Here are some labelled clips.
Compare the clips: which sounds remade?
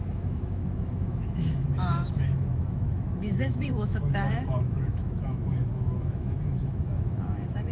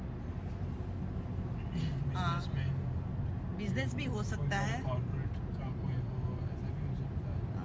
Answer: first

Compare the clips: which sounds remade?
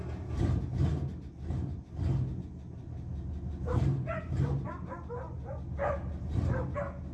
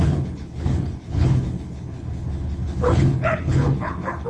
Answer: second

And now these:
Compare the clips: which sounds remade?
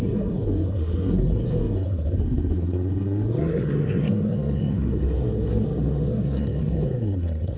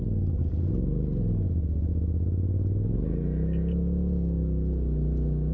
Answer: first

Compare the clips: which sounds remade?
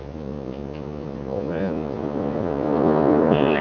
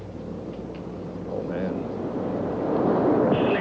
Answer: first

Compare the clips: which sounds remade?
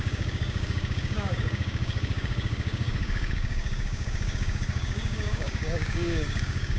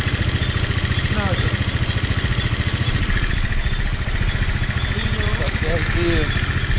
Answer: first